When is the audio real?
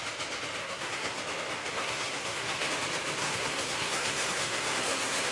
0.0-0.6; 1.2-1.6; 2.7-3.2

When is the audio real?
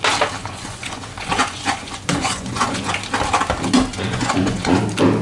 0.0-0.4; 2.9-3.9; 4.8-5.2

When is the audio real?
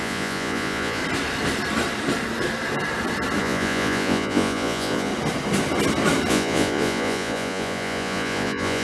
1.0-3.4; 5.1-6.3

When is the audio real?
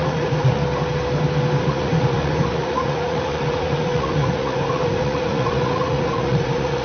0.6-1.6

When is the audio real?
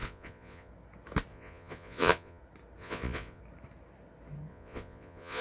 0.7-1.3; 2.4-2.8; 3.4-4.5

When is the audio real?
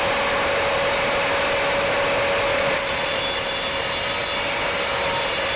0.0-2.5; 3.2-5.6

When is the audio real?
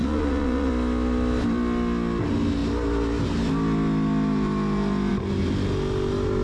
0.7-6.4